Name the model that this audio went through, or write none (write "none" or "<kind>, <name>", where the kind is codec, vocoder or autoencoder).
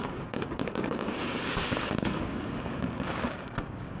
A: codec, DAC